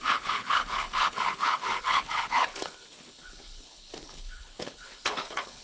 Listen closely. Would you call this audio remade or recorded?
remade